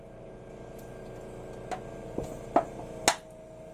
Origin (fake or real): real